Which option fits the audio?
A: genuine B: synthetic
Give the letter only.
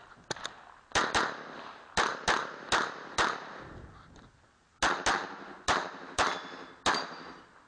A